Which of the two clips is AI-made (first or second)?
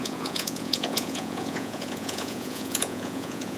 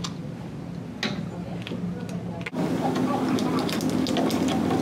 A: first